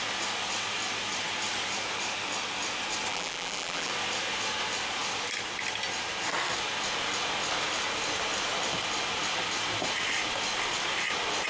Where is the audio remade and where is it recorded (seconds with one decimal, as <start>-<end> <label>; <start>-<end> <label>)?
0.0-3.1 recorded; 3.1-3.9 remade; 3.9-11.5 recorded